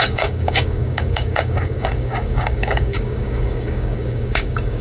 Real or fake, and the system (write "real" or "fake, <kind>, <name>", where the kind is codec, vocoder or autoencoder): fake, codec, DAC